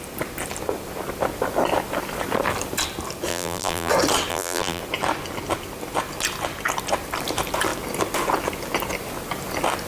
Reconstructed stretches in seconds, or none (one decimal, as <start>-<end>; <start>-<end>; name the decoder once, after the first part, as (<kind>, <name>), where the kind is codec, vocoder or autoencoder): 3.3-3.9 (vocoder, BigVGAN v2); 4.3-4.8